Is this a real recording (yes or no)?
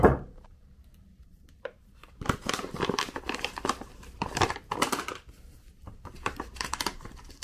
no